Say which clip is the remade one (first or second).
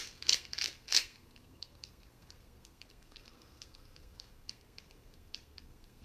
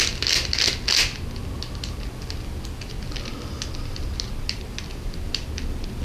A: first